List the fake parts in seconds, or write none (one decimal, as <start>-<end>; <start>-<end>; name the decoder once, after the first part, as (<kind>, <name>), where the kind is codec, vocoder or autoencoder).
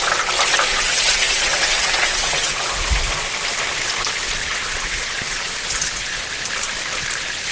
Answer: 0.7-3.1 (vocoder, Vocos); 4.4-6.2